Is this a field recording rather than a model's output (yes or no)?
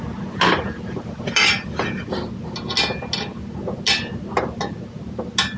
yes